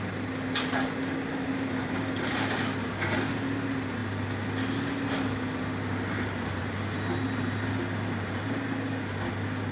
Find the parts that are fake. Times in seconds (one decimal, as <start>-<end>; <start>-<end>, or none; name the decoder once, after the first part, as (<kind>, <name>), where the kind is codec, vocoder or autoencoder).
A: none